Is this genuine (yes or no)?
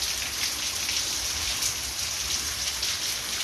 yes